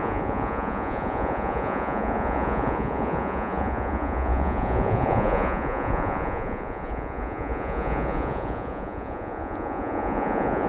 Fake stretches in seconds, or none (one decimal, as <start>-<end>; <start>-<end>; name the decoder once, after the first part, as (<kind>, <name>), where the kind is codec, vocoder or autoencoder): 0.0-10.7 (vocoder, Vocos)